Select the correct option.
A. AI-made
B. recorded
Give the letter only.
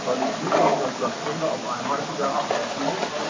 B